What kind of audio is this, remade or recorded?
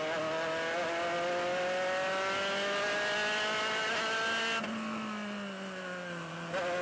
recorded